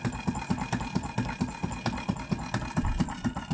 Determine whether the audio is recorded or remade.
recorded